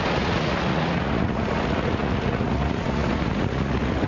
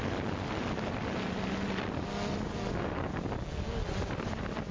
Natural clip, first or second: second